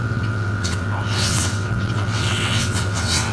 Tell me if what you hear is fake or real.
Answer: fake